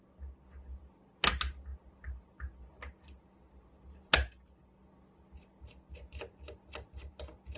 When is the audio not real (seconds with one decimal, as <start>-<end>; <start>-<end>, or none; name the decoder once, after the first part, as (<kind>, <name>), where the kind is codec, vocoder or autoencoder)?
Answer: none